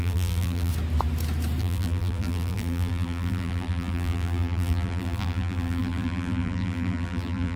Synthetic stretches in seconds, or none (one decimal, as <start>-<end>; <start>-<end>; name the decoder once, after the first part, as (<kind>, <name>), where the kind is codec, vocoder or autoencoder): 0.0-0.7 (vocoder, BigVGAN v2); 1.6-7.6